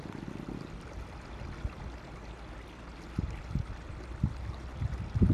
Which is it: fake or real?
real